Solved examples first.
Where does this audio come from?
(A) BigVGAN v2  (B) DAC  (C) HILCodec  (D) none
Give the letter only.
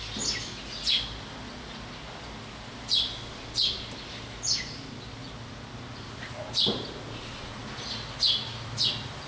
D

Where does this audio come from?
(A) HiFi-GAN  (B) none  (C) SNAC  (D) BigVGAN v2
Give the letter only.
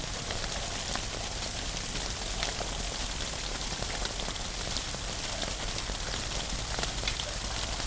B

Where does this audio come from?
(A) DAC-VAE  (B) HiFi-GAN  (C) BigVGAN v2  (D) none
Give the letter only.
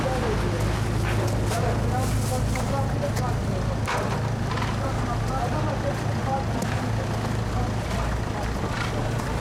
D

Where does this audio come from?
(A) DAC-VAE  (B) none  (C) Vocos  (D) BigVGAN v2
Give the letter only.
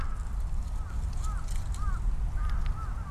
B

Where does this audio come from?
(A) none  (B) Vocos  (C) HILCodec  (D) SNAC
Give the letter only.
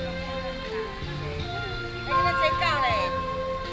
A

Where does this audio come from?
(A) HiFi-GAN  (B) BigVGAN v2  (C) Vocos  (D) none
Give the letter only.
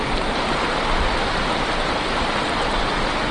D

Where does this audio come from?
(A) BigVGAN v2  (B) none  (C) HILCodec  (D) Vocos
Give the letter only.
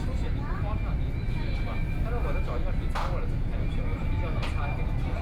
B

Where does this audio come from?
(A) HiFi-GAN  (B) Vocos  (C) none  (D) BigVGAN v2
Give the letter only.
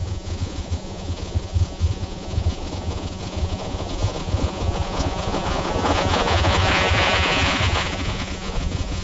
B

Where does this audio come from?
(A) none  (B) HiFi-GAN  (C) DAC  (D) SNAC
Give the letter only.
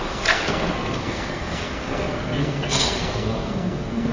D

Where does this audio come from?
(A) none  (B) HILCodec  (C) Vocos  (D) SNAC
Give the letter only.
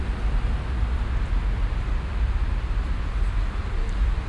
A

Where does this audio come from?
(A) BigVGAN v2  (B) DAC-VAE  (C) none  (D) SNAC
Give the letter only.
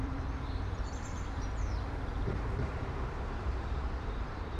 A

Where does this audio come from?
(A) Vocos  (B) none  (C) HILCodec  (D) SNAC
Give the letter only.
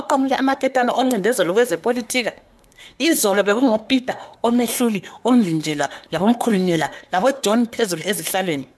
D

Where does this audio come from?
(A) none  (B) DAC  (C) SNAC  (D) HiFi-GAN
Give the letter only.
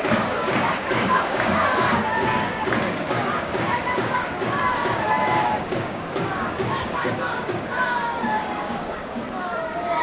B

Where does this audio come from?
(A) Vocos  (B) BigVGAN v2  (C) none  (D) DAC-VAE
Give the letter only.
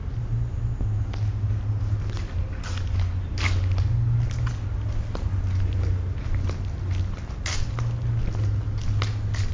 C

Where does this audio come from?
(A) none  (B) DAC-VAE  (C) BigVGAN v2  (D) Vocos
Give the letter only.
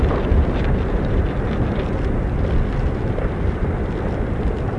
A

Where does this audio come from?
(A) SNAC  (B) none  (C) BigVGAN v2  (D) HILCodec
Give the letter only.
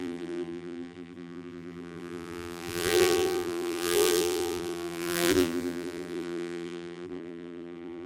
C